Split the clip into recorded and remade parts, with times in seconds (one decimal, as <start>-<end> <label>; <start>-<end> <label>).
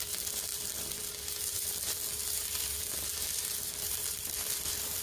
0.0-5.0 remade